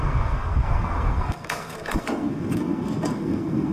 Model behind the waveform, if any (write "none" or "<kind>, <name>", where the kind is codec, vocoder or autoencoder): codec, SNAC